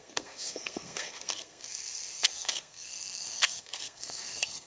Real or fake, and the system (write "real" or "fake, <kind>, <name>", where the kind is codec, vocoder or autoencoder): fake, codec, SNAC